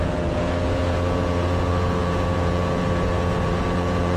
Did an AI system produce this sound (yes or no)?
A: yes